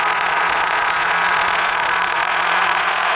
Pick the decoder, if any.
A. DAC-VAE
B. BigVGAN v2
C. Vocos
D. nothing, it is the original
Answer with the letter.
C